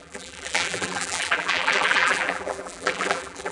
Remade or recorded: remade